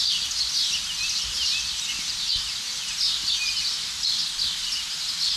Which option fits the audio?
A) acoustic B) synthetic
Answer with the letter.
A